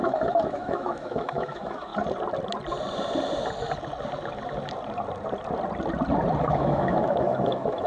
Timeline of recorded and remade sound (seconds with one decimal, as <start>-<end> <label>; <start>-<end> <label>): 0.0-1.9 remade; 1.9-6.4 recorded; 6.4-7.9 remade